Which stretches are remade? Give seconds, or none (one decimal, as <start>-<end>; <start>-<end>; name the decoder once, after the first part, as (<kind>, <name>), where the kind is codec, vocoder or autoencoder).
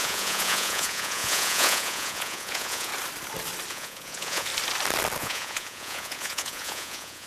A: 0.0-2.9 (vocoder, Vocos); 3.7-4.5; 5.2-7.3